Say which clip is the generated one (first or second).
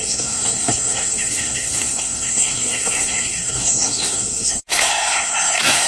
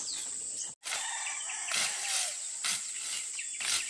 first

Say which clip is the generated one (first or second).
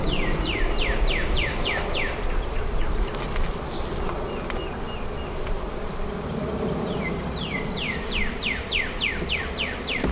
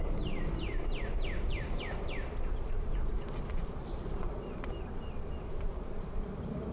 second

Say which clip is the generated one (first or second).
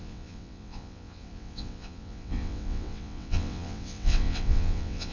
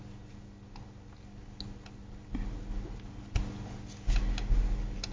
first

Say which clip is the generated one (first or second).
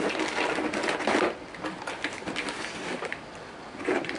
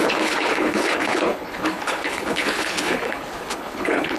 second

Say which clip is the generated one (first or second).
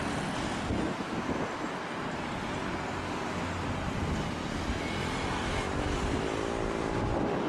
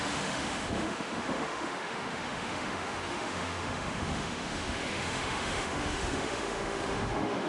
second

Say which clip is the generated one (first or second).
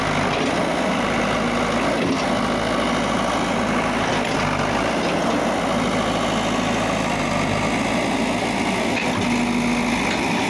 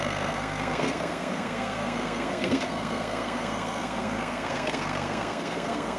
second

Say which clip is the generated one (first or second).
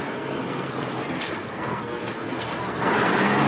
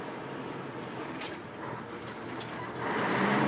first